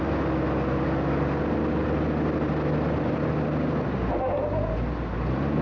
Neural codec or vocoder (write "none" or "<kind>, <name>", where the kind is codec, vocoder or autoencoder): none